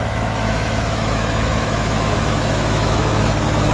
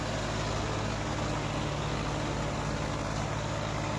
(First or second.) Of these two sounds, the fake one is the first